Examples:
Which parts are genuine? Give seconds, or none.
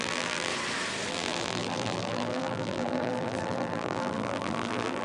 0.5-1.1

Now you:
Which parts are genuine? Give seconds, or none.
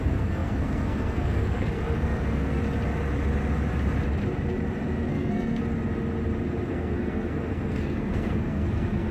2.6-5.1; 5.6-6.7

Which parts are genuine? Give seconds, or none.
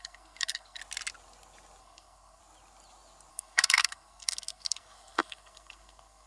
0.8-1.8; 2.4-3.3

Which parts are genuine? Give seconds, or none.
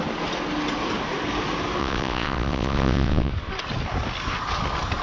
0.0-1.8; 3.3-5.0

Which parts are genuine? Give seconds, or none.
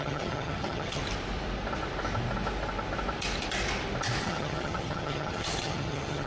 1.0-4.2